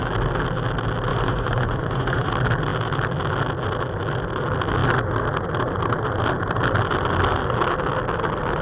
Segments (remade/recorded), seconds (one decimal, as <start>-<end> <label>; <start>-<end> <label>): 0.0-1.1 recorded; 1.1-2.3 remade; 2.3-8.6 recorded